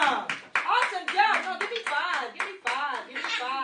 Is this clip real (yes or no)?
yes